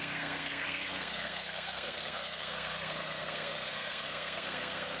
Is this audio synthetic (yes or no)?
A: yes